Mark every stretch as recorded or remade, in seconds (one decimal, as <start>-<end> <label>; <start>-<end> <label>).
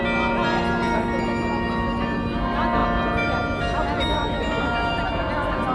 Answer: 0.0-5.7 recorded